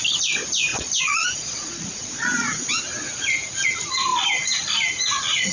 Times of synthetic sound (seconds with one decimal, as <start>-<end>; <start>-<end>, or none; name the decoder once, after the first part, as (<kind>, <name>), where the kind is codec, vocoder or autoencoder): 0.7-2.7 (vocoder, Vocos)